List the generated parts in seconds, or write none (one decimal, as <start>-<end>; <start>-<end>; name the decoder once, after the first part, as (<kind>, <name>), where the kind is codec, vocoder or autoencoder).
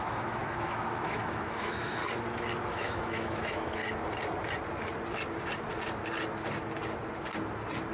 0.0-2.0 (autoencoder, DAC-VAE); 2.7-3.8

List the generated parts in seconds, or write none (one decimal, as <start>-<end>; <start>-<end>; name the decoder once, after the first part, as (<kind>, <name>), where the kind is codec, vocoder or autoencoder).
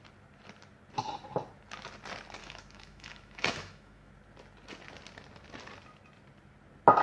2.4-4.1 (autoencoder, DAC-VAE)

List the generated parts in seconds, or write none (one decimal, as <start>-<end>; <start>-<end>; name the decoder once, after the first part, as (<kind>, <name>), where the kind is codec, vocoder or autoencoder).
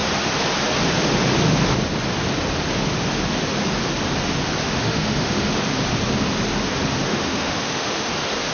4.6-5.5 (autoencoder, DAC-VAE); 7.1-8.1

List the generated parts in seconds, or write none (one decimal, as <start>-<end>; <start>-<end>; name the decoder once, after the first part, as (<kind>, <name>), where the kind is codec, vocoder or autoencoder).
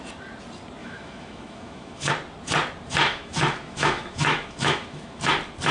0.8-2.1 (autoencoder, DAC-VAE); 3.0-5.3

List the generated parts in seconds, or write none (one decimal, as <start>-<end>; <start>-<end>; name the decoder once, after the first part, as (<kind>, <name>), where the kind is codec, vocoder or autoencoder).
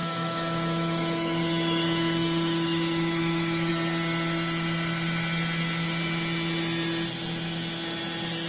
0.0-3.7 (autoencoder, DAC-VAE)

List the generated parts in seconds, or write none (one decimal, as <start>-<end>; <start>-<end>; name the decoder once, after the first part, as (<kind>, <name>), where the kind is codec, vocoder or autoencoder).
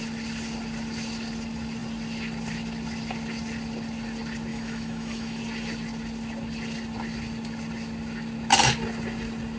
4.5-5.4 (autoencoder, DAC-VAE)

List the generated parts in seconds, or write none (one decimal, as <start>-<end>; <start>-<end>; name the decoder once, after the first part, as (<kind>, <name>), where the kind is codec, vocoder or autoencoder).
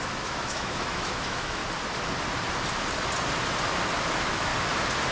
0.0-1.6 (autoencoder, DAC-VAE); 4.0-4.5